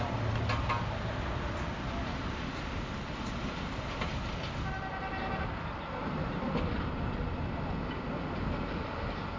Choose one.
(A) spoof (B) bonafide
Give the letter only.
B